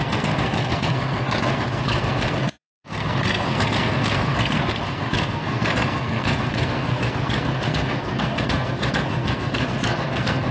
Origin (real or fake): fake